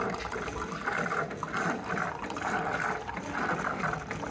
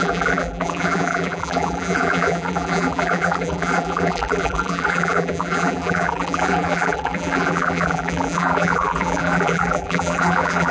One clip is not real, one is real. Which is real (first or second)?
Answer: first